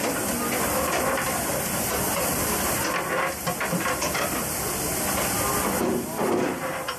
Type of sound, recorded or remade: recorded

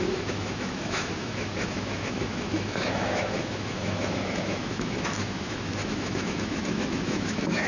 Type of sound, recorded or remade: remade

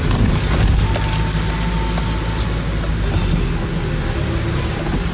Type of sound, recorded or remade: recorded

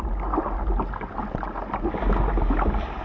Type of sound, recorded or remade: recorded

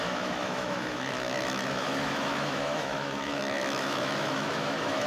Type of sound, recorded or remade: remade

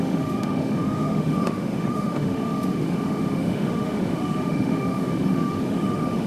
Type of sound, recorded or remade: remade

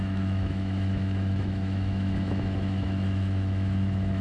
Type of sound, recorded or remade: remade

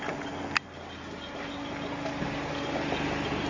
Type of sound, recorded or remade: recorded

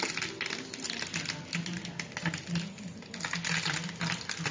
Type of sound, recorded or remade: recorded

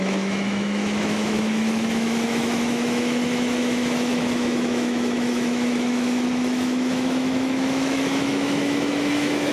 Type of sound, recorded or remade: remade